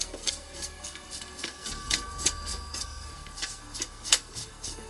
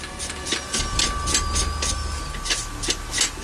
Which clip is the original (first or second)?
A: second